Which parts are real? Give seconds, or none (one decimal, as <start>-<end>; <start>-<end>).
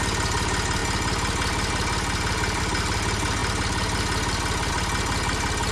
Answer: 0.0-5.7